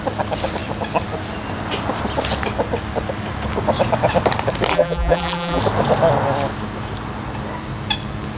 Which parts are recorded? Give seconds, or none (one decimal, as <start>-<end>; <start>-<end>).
0.0-4.7; 5.6-8.4